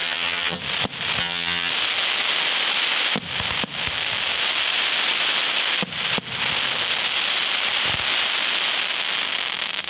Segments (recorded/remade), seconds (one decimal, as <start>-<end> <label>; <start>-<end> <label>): 0.0-0.6 remade; 0.6-1.2 recorded; 1.2-1.7 remade; 1.7-9.9 recorded